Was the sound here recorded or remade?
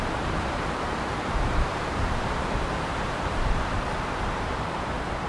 remade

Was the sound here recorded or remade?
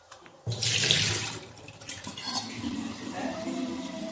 remade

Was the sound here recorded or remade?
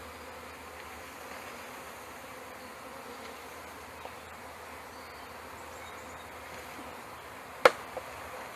recorded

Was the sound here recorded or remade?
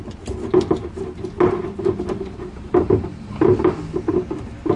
recorded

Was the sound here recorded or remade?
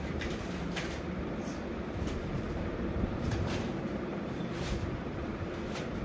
remade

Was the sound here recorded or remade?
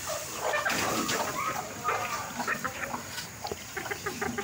recorded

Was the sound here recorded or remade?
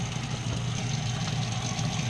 recorded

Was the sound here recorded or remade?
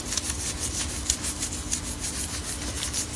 recorded